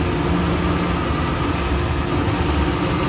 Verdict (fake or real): real